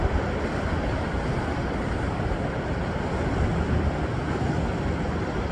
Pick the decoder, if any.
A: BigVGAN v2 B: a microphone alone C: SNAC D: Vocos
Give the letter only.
B